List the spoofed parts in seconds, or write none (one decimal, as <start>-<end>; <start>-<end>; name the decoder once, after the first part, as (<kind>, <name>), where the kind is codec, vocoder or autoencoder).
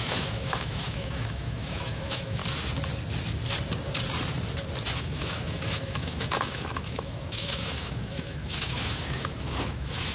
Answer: 0.0-2.4 (autoencoder, DAC-VAE); 5.0-10.1